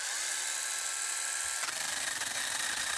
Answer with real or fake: real